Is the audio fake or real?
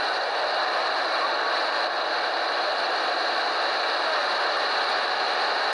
real